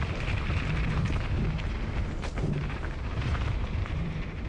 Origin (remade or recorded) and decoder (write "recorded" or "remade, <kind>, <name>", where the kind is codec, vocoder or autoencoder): remade, vocoder, BigVGAN v2